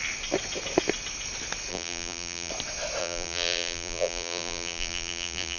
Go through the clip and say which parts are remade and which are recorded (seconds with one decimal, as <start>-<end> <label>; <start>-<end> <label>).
0.0-1.7 recorded; 1.7-2.5 remade; 2.5-3.0 recorded; 3.0-5.6 remade